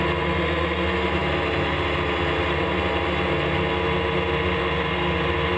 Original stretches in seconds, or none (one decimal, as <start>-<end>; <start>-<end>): 0.0-5.6